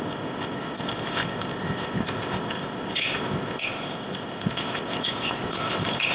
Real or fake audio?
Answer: fake